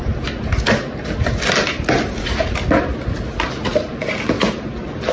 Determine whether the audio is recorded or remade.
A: recorded